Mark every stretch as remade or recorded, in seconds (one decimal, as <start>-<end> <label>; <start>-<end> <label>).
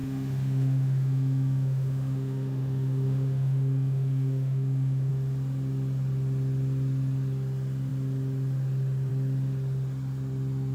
0.0-5.1 remade; 5.1-10.7 recorded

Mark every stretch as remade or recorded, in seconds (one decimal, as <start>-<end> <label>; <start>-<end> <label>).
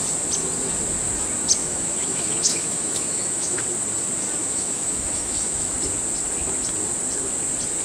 0.0-1.6 recorded; 1.6-3.6 remade; 3.6-4.4 recorded; 4.4-5.7 remade; 5.7-7.8 recorded